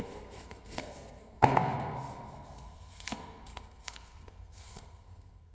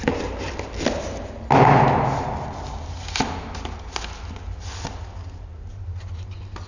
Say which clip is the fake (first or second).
first